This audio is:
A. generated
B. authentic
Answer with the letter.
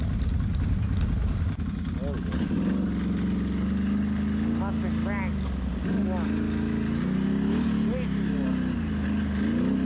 B